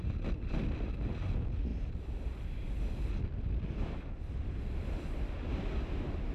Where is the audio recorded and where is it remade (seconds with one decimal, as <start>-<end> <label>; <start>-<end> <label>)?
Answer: 0.0-6.3 recorded